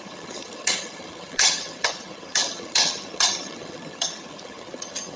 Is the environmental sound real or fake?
fake